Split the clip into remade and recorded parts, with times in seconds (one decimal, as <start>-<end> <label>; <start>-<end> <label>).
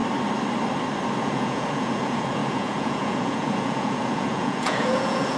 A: 0.0-1.2 recorded; 1.2-5.4 remade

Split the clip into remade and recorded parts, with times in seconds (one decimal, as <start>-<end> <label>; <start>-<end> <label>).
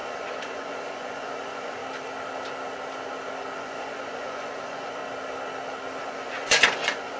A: 0.0-1.8 remade; 1.8-3.6 recorded; 3.6-5.0 remade; 5.0-6.0 recorded; 6.0-7.2 remade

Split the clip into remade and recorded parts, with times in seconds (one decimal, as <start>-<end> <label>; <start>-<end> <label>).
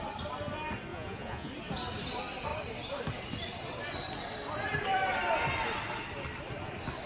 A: 0.0-0.9 recorded; 0.9-1.5 remade; 1.5-7.1 recorded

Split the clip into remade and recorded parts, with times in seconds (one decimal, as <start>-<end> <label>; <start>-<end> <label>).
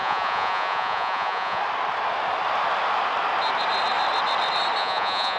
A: 0.0-1.6 remade; 1.6-4.8 recorded; 4.8-5.4 remade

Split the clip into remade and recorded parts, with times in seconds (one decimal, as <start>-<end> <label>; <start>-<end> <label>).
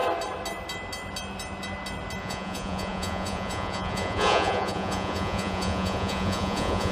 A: 0.0-2.2 recorded; 2.2-6.9 remade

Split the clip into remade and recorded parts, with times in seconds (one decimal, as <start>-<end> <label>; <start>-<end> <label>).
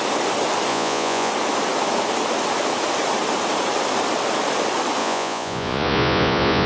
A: 0.0-0.7 recorded; 0.7-1.3 remade; 1.3-5.0 recorded; 5.0-6.7 remade